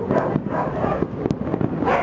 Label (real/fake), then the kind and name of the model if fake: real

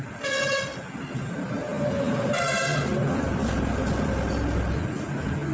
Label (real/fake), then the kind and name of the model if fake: real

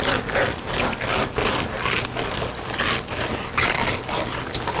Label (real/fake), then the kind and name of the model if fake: real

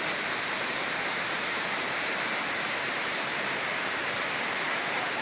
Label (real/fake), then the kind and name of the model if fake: fake, vocoder, BigVGAN v2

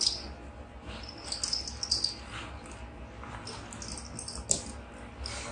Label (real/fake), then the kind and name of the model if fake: real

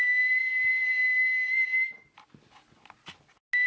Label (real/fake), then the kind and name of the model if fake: real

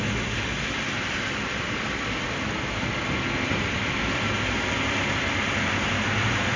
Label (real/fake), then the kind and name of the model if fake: real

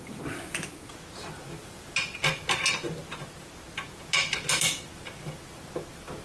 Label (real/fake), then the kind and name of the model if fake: real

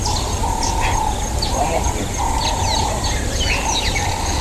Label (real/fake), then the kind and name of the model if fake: real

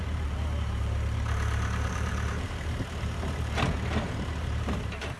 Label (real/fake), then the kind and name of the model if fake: fake, vocoder, BigVGAN v2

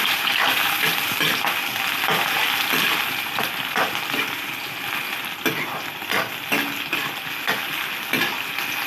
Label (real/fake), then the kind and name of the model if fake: real